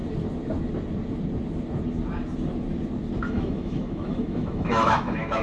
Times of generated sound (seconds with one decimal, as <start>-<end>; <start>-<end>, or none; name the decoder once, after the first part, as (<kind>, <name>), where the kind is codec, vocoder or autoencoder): 3.2-5.4 (autoencoder, DAC-VAE)